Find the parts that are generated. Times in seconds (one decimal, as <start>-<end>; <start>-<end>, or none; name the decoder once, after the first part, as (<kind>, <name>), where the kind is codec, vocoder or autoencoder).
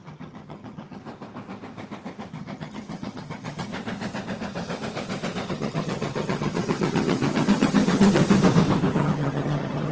0.0-1.0 (vocoder, HiFi-GAN); 2.3-3.7; 5.5-8.2; 8.9-9.9